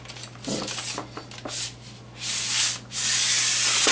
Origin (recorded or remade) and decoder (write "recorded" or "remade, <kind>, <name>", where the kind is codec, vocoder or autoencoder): recorded